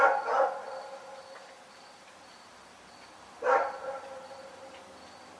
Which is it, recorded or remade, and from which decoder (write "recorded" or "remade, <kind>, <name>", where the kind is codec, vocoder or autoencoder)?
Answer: recorded